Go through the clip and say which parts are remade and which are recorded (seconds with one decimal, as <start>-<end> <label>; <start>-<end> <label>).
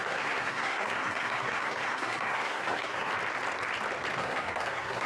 0.0-3.1 remade; 3.1-4.2 recorded; 4.2-5.1 remade